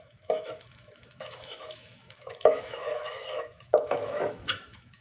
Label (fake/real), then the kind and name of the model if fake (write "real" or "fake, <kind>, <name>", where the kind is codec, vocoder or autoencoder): fake, autoencoder, DAC-VAE